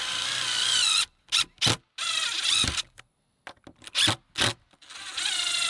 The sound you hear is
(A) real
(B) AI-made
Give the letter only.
A